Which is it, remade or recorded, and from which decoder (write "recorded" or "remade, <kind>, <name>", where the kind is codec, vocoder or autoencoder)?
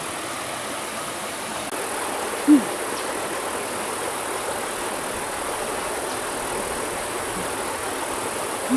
recorded